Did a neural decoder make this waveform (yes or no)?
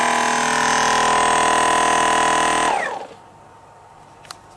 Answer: no